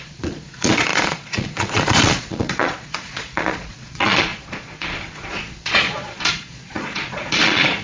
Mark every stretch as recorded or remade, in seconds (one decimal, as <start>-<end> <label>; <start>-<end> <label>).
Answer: 0.0-7.8 remade